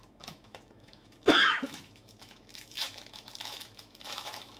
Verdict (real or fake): fake